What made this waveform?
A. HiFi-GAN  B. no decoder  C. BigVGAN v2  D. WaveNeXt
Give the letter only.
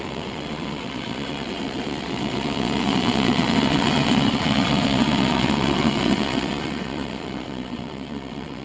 D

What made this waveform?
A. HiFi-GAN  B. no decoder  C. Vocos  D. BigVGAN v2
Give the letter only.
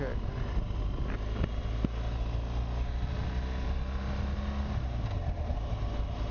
B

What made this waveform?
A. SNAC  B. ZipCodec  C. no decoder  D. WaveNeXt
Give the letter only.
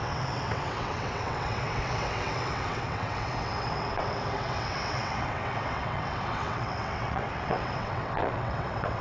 D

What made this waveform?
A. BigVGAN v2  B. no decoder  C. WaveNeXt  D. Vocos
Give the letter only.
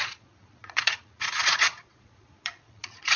D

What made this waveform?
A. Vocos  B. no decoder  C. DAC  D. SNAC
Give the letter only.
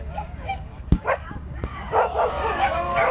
C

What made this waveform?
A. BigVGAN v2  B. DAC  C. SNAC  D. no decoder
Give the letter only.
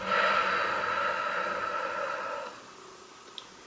D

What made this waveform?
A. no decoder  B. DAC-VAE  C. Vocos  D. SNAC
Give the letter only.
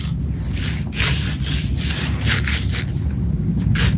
A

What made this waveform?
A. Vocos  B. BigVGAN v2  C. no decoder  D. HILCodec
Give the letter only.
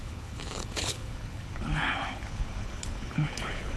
D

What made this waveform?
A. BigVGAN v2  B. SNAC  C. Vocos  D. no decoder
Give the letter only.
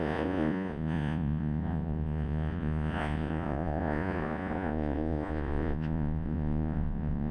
C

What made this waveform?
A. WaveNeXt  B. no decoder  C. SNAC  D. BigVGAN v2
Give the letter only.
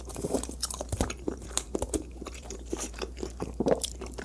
D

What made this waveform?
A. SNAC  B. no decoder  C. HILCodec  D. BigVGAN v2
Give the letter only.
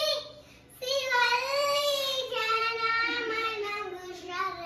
D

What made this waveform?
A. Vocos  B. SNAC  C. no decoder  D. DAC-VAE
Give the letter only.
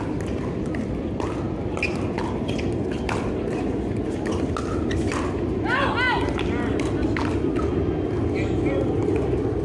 C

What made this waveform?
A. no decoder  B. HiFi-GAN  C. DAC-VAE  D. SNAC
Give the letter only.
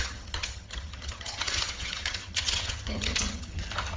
B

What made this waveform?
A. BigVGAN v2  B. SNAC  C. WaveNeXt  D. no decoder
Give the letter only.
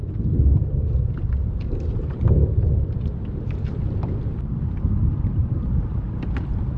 D